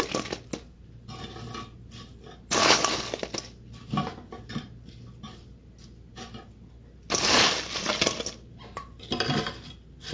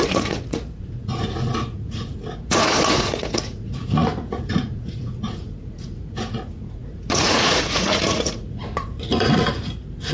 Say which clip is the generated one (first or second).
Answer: second